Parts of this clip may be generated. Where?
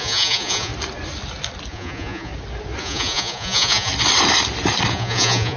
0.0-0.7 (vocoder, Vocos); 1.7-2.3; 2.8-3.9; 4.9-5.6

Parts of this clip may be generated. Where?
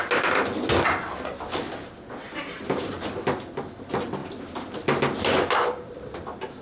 none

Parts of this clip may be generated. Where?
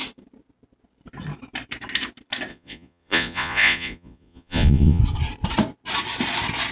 2.5-5.0 (vocoder, Vocos)